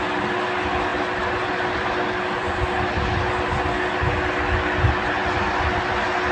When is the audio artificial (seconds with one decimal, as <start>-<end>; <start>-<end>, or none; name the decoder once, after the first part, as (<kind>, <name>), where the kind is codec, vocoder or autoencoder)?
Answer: 0.9-3.2 (vocoder, BigVGAN v2)